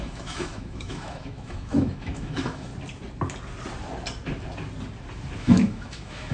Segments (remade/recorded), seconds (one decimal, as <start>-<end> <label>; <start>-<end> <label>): 0.0-2.7 remade; 2.7-5.4 recorded; 5.4-6.3 remade